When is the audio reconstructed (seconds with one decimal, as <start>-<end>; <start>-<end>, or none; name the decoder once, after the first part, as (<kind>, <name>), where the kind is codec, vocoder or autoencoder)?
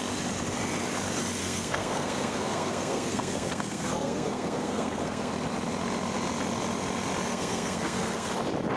1.4-5.3 (codec, SNAC); 7.3-8.3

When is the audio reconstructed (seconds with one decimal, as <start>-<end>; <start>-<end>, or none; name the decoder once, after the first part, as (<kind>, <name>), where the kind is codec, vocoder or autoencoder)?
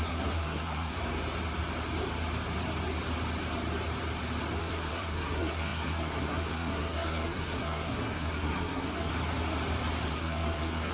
0.0-1.0 (codec, SNAC); 4.6-9.1; 10.1-10.9